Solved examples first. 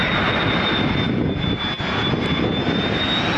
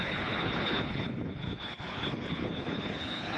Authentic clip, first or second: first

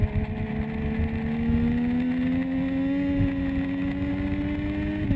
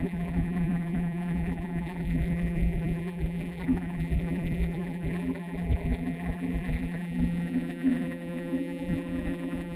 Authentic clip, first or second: first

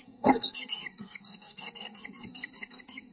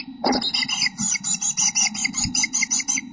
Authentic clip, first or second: second